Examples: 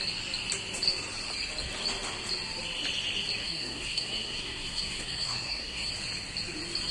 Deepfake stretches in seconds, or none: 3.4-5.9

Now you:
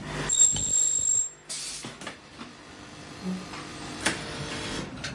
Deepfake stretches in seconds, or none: 3.7-5.1

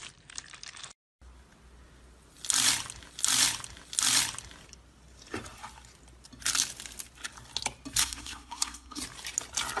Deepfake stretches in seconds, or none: 8.0-9.0